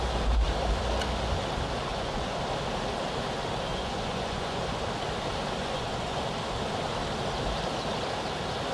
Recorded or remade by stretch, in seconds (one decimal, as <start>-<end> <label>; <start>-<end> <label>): 0.0-1.9 recorded; 1.9-2.4 remade; 2.4-3.7 recorded; 3.7-4.6 remade; 4.6-5.6 recorded; 5.6-6.2 remade; 6.2-8.7 recorded